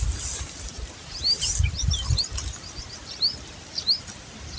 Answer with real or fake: real